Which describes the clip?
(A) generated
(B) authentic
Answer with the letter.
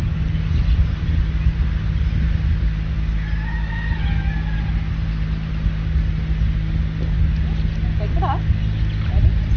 B